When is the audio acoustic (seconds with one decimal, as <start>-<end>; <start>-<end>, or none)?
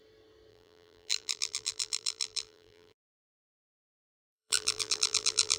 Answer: 0.0-0.5; 3.5-4.1